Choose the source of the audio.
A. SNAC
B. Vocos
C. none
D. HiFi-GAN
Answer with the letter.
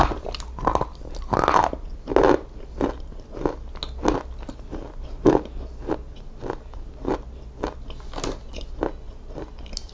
C